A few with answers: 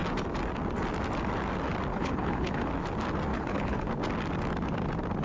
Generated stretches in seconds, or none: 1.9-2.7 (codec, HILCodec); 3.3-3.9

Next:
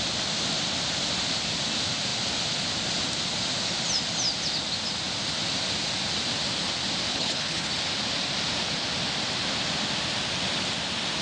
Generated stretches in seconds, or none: 7.1-7.7 (codec, HILCodec)

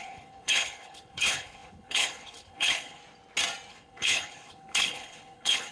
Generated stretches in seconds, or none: 0.0-3.0 (codec, HILCodec); 3.7-5.7

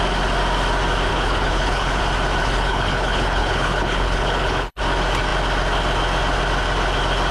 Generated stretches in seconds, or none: 1.1-2.0 (codec, HILCodec); 2.4-4.8

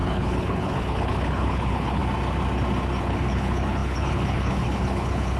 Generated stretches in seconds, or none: 0.0-2.0 (codec, HILCodec); 3.0-5.4

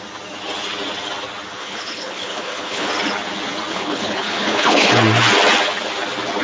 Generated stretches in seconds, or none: 1.6-2.9 (codec, HILCodec); 3.7-4.9

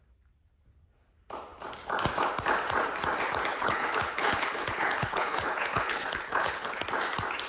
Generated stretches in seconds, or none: 3.5-6.8 (codec, HILCodec)

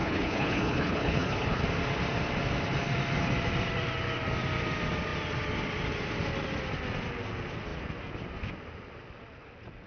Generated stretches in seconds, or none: 0.0-1.6 (codec, HILCodec)